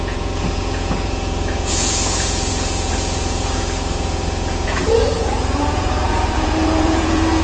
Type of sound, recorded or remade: remade